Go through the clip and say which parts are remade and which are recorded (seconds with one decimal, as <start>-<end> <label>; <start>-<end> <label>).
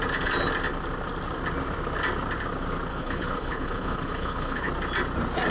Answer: 0.0-2.9 recorded; 2.9-4.7 remade; 4.7-5.5 recorded